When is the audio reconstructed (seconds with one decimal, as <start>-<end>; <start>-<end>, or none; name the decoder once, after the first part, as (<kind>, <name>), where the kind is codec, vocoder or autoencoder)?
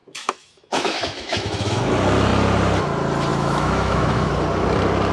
0.0-1.9 (autoencoder, DAC-VAE); 3.3-4.3